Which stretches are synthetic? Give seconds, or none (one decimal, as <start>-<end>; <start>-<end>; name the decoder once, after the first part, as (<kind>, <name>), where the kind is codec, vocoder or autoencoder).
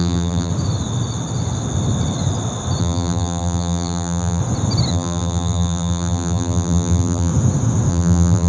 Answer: 0.0-0.5 (vocoder, BigVGAN v2); 2.8-4.4; 4.9-7.3; 7.9-8.5